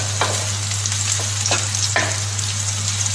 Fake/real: real